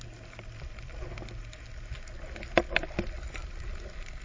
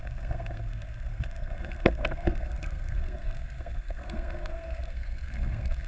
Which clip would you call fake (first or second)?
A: second